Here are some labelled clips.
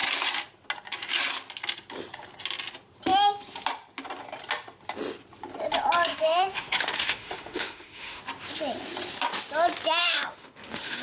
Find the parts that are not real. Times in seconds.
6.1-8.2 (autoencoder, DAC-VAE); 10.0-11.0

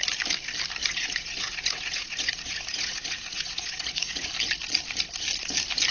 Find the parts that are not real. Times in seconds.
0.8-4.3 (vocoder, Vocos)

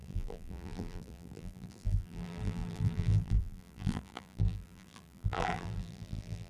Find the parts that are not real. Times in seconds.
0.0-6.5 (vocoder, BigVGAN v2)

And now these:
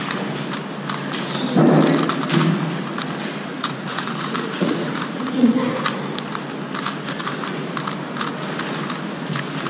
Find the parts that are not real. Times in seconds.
3.5-5.9 (vocoder, Vocos)